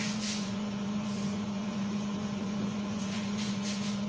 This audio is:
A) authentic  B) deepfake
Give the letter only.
B